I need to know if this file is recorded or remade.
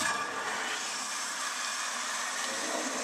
recorded